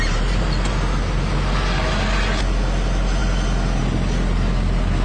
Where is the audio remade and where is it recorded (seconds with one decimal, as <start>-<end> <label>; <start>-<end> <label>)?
0.0-5.0 recorded